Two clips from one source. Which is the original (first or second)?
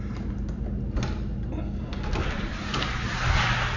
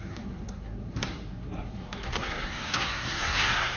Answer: first